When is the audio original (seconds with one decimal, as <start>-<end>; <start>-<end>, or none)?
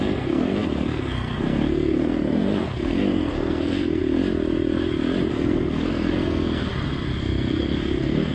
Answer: 4.0-5.3; 6.7-7.2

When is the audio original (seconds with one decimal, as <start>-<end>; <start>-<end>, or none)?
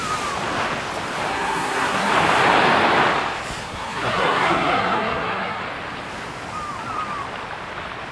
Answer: 0.0-1.3; 2.1-3.6; 5.6-8.1